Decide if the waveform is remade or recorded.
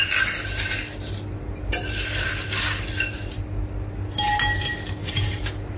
recorded